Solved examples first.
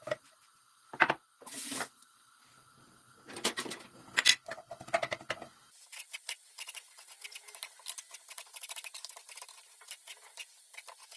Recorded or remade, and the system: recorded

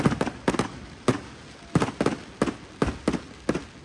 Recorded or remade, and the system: recorded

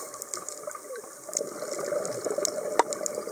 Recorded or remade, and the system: recorded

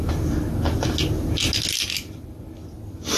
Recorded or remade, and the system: recorded